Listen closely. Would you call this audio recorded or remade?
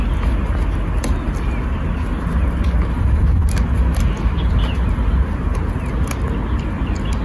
recorded